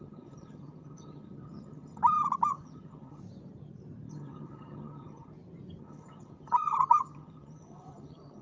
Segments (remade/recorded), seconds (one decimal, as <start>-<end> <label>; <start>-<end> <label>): 0.0-2.0 remade; 2.0-2.5 recorded; 2.5-3.2 remade; 3.2-4.1 recorded; 4.1-5.3 remade; 5.3-5.8 recorded; 5.8-8.4 remade